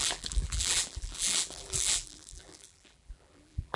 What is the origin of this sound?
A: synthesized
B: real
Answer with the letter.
A